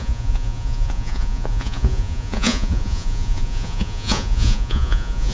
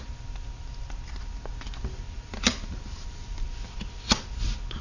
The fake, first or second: first